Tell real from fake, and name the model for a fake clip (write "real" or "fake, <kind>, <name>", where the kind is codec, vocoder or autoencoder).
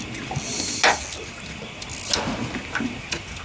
real